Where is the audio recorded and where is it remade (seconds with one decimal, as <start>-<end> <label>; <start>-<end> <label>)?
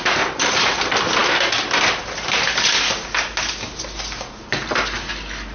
0.0-5.5 recorded